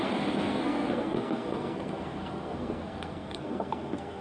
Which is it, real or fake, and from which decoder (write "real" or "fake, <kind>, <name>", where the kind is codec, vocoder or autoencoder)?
fake, codec, SNAC